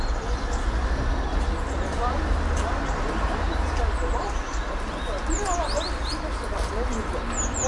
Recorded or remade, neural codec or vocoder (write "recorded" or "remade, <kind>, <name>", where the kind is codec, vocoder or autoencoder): recorded